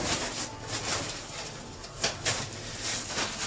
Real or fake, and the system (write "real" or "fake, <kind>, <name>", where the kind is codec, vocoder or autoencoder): real